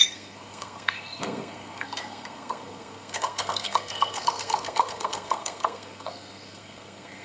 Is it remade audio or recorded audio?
remade